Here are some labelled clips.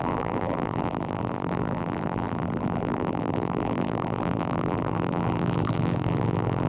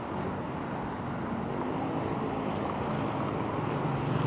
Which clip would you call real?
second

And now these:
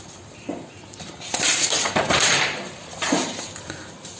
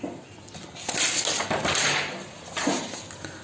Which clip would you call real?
second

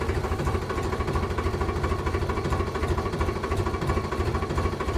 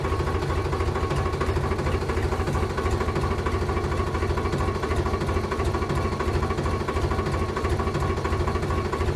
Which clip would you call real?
second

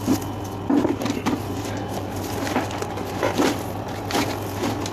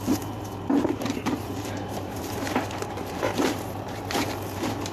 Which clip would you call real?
first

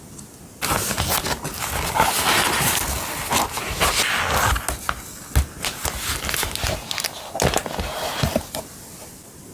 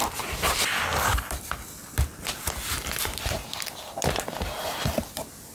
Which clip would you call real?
first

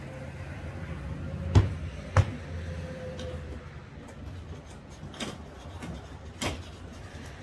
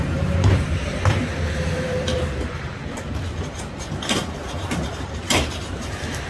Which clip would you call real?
first